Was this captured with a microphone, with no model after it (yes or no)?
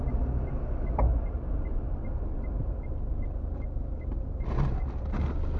yes